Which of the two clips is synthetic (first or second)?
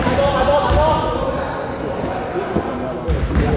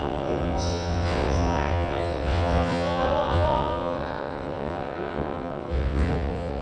second